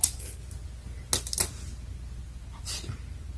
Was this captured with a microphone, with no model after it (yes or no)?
yes